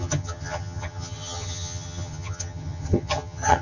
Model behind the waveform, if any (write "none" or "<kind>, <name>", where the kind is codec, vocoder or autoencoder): vocoder, HiFi-GAN